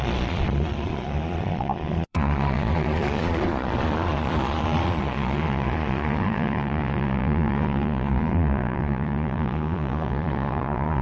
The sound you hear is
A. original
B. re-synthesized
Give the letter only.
B